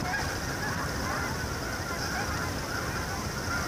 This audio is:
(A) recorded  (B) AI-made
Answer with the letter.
A